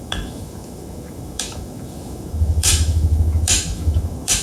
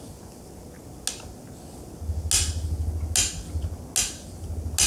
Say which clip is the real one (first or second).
second